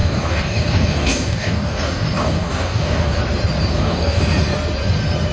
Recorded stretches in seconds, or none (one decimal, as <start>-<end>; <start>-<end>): 3.2-3.7; 4.2-5.3